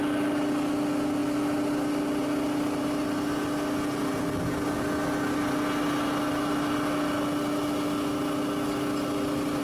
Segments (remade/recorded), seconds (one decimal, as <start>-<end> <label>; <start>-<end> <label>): 0.0-9.6 recorded